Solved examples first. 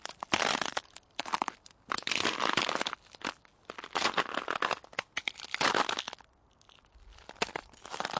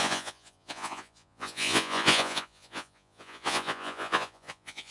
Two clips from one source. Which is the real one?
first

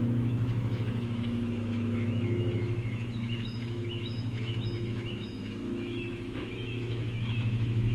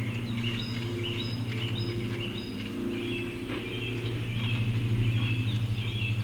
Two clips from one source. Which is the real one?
second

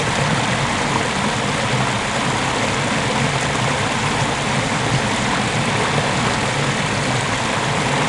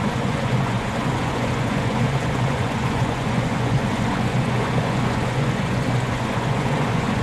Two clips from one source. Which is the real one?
first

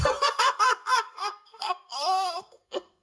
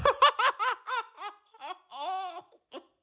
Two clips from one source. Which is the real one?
second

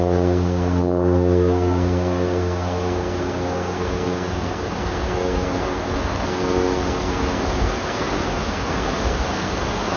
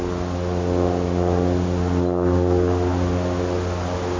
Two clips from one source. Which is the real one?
second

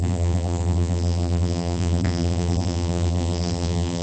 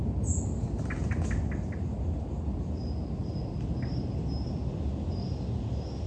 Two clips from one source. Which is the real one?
second